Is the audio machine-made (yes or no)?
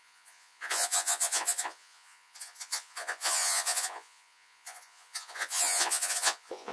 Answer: yes